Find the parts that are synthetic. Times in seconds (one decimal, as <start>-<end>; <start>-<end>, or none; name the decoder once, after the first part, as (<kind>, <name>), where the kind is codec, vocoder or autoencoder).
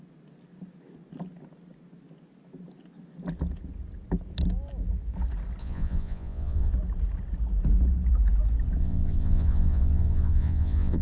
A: 5.6-6.7 (vocoder, Vocos); 8.8-11.0